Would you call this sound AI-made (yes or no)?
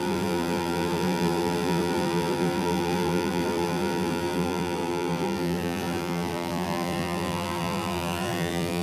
yes